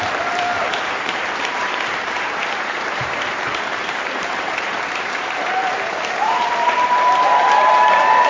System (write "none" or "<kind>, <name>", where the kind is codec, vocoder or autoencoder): vocoder, BigVGAN v2